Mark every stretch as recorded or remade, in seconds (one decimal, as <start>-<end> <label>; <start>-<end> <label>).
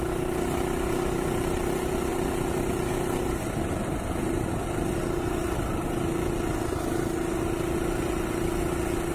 0.0-9.1 recorded